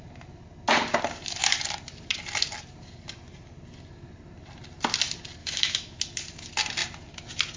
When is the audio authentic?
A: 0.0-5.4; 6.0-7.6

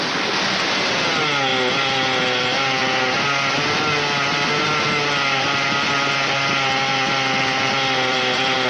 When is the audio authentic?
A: 0.0-5.0; 6.1-6.9

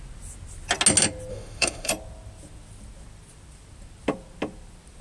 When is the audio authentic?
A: 0.0-1.3; 1.9-5.0

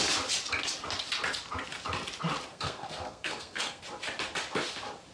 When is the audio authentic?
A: 0.0-2.5; 3.8-5.1

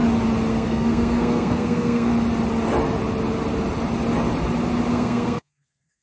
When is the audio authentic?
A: 0.0-0.5; 2.1-4.9

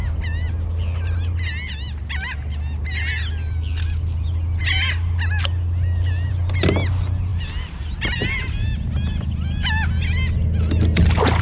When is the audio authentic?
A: 0.0-11.4

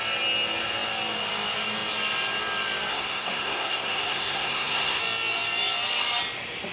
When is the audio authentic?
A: 0.0-2.9; 5.0-6.7